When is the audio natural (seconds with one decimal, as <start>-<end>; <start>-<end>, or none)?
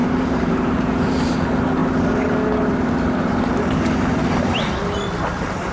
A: 1.1-5.7